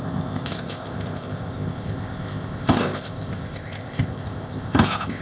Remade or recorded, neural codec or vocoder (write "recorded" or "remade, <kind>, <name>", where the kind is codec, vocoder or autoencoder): remade, codec, ZipCodec